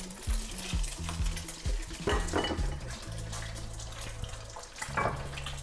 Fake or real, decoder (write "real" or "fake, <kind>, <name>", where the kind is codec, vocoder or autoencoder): real